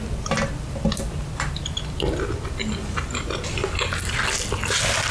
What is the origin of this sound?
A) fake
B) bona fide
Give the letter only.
B